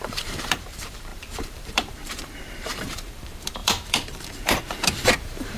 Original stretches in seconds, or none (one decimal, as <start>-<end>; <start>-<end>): none